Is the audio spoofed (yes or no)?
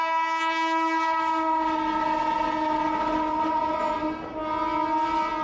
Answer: no